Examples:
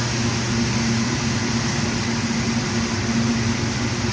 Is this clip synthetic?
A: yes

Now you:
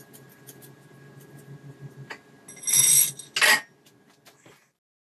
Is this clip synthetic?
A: no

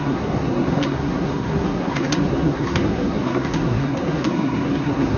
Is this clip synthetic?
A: yes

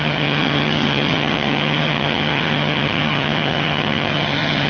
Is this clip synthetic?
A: yes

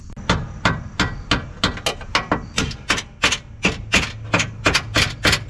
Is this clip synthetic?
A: no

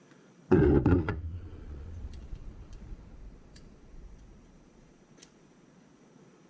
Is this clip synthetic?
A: yes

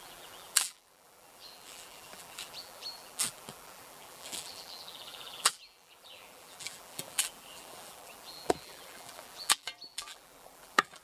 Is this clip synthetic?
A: yes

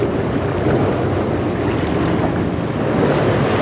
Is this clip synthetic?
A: no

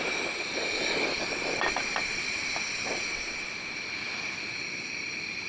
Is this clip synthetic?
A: no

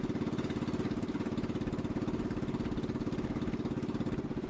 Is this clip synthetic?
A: no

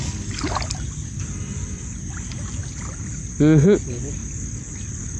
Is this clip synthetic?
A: no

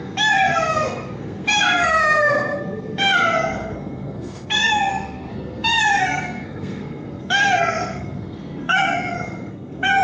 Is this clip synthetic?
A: yes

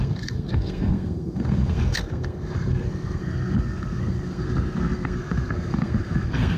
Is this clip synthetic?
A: yes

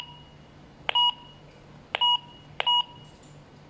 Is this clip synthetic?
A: no